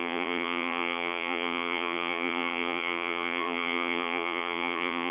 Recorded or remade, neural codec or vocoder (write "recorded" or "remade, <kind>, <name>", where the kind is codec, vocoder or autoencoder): remade, vocoder, BigVGAN v2